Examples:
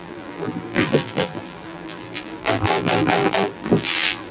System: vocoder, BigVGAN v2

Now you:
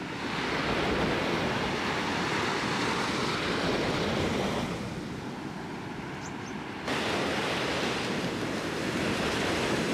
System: none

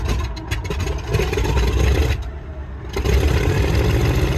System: none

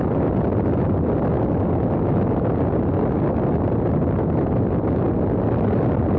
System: none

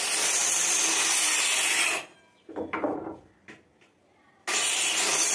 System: none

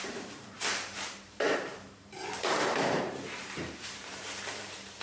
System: vocoder, BigVGAN v2